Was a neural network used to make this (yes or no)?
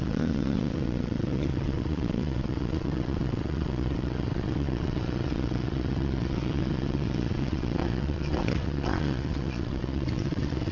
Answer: yes